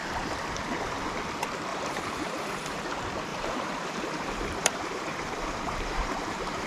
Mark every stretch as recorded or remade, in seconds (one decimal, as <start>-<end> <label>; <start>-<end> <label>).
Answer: 0.0-1.7 recorded; 1.7-2.8 remade; 2.8-3.3 recorded; 3.3-6.7 remade